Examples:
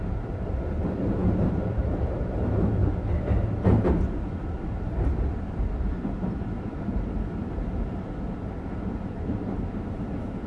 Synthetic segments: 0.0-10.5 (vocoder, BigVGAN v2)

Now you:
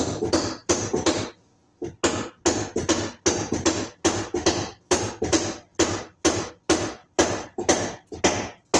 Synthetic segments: 0.6-1.8 (vocoder, BigVGAN v2); 4.4-5.1; 5.7-6.5; 7.0-8.2

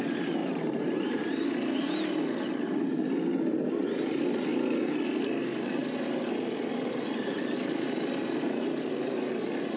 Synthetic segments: 0.4-1.2 (vocoder, BigVGAN v2)

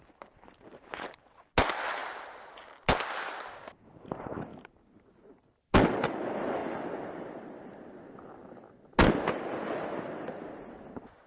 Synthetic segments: none

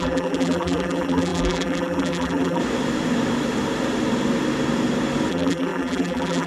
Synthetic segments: 0.0-2.6 (vocoder, BigVGAN v2); 5.3-6.5

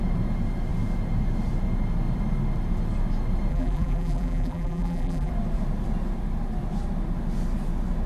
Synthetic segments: 3.5-5.3 (vocoder, BigVGAN v2)

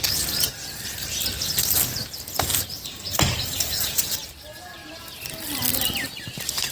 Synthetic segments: 2.5-3.8 (vocoder, BigVGAN v2)